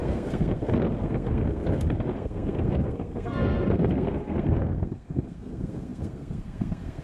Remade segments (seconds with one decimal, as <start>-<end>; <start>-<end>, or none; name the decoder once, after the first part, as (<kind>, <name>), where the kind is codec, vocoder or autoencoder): 0.0-7.0 (codec, SNAC)